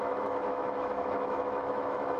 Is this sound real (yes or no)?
no